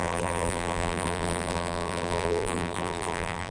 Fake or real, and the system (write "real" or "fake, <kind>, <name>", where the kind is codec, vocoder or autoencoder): fake, vocoder, BigVGAN v2